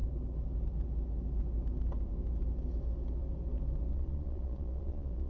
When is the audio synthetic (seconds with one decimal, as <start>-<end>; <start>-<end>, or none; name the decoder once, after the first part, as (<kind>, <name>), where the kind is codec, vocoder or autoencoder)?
3.9-5.3 (vocoder, Vocos)